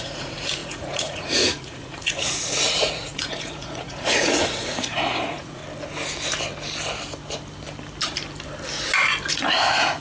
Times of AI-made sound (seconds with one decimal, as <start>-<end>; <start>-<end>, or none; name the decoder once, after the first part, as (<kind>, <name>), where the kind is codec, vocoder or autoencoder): 0.0-5.6 (vocoder, Vocos); 9.3-10.0